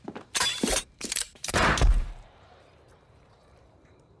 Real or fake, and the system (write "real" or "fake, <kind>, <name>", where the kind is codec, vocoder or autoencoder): fake, vocoder, BigVGAN v2